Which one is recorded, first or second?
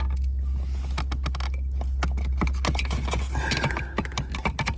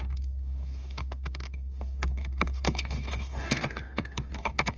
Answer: first